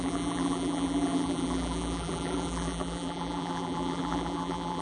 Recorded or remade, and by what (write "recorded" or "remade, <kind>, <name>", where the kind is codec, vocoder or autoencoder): remade, vocoder, BigVGAN v2